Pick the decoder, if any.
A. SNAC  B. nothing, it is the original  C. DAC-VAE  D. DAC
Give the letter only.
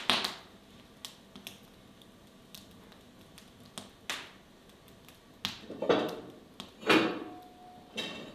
B